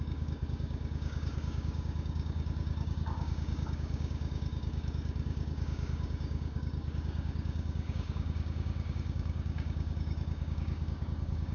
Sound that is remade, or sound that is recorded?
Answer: remade